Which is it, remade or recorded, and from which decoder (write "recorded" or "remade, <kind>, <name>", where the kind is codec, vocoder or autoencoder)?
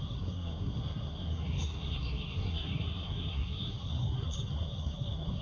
remade, codec, SNAC